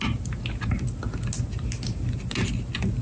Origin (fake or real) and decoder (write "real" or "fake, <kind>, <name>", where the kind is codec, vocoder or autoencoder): real